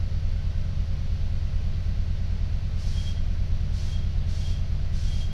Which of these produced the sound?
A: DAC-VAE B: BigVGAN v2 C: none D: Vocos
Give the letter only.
C